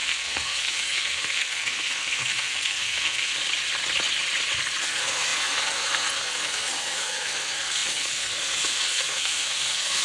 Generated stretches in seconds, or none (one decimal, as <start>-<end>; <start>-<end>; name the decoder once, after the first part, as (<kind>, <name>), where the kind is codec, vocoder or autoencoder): 0.0-3.3 (codec, SNAC); 4.8-10.0